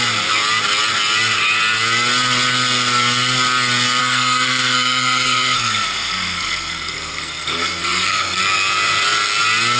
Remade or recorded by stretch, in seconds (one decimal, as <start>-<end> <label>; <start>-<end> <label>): 0.0-4.0 recorded; 4.0-8.4 remade; 8.4-9.8 recorded